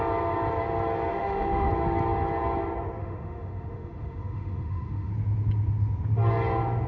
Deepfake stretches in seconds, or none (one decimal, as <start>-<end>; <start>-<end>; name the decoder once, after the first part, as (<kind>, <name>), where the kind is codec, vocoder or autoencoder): 1.1-1.7 (autoencoder, DAC-VAE); 3.0-5.1